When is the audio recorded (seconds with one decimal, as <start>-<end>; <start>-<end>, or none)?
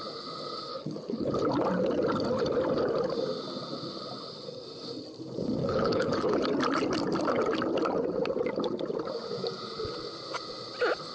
0.0-0.7; 1.3-5.6; 6.4-11.1